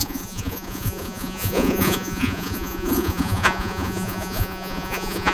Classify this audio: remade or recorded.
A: remade